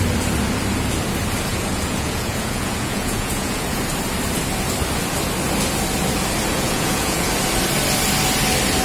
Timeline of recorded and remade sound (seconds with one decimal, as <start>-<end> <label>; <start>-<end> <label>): 0.0-1.5 recorded; 1.5-3.8 remade; 3.8-6.5 recorded; 6.5-7.3 remade; 7.3-8.8 recorded